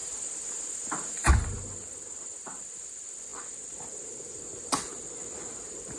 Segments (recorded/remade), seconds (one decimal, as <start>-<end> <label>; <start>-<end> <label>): 0.0-1.3 remade; 1.3-6.0 recorded